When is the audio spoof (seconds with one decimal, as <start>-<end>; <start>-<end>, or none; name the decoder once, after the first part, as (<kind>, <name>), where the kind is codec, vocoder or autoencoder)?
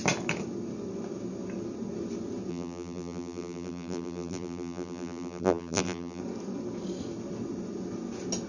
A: 2.5-6.2 (vocoder, BigVGAN v2)